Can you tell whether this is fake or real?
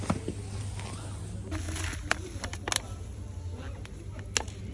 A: real